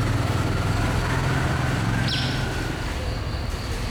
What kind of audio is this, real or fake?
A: real